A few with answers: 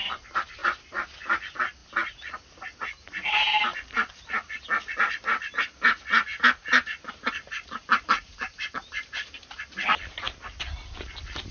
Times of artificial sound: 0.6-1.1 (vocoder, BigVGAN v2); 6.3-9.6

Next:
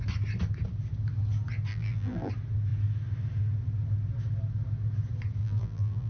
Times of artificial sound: 1.7-2.3 (vocoder, BigVGAN v2); 5.4-6.1

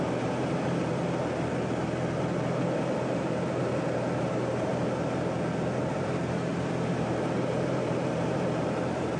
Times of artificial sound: 0.0-1.0 (vocoder, BigVGAN v2); 3.1-4.7; 5.9-9.2

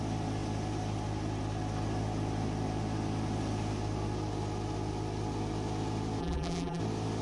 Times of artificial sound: 6.2-6.8 (vocoder, BigVGAN v2)

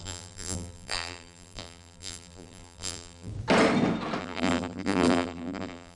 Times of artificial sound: 0.0-3.3 (vocoder, BigVGAN v2); 4.2-6.0

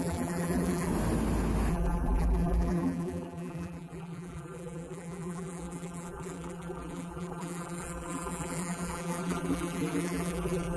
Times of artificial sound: 0.0-0.9 (vocoder, BigVGAN v2); 1.7-10.8

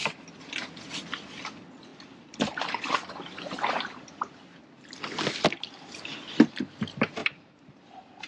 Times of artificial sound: 7.2-8.3 (vocoder, BigVGAN v2)

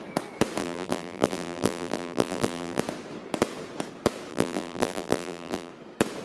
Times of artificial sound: 0.6-2.8 (vocoder, BigVGAN v2); 4.3-5.7